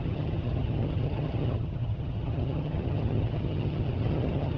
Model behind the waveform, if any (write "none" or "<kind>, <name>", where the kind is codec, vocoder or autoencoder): vocoder, HiFi-GAN